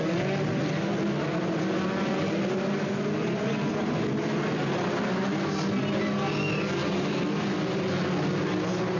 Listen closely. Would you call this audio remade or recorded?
recorded